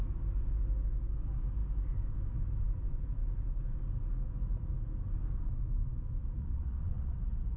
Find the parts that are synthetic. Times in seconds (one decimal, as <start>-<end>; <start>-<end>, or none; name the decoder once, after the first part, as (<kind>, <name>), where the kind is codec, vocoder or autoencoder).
6.4-7.1 (vocoder, Vocos)